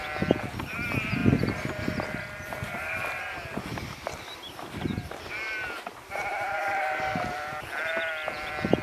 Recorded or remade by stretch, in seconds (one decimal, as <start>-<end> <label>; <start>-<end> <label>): 0.0-3.7 remade; 3.7-5.2 recorded; 5.2-8.8 remade